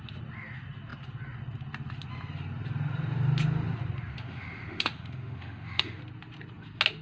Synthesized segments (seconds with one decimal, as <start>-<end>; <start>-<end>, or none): 4.1-6.0